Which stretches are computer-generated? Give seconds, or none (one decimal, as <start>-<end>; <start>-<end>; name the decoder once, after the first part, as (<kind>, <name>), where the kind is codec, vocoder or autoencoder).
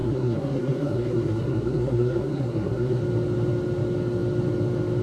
0.0-3.0 (codec, SNAC)